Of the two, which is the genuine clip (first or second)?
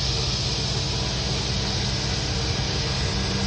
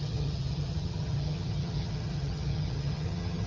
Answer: first